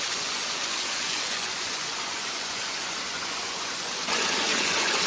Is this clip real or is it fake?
fake